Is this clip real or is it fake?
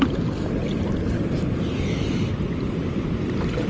real